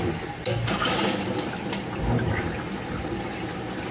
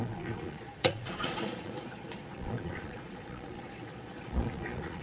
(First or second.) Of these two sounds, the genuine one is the first